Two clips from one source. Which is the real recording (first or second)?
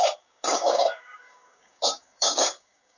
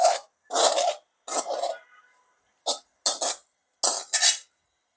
second